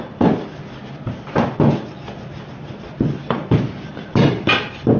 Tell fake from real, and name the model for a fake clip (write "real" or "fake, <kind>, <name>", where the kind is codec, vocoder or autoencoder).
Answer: real